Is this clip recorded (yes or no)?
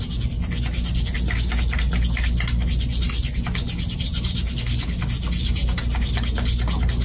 yes